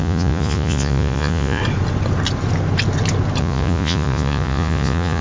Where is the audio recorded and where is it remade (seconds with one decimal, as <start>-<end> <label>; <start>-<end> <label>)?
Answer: 0.0-1.6 remade; 1.6-3.4 recorded; 3.4-5.2 remade